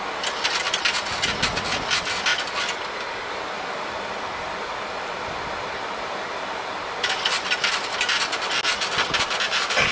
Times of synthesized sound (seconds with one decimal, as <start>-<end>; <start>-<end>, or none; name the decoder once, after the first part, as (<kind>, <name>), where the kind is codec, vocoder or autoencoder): none